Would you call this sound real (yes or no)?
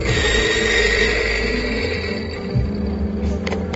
yes